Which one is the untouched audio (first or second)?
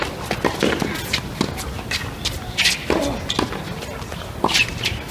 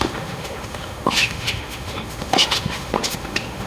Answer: first